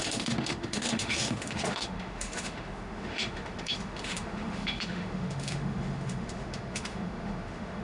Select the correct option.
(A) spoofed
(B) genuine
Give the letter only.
A